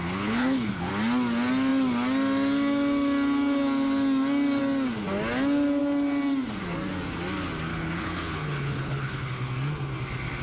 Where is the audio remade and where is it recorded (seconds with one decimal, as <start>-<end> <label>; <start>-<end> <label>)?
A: 0.0-0.9 remade; 0.9-7.7 recorded; 7.7-9.5 remade; 9.5-10.4 recorded